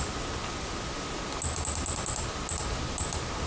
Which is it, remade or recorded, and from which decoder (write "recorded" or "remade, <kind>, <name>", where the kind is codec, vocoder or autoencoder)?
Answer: recorded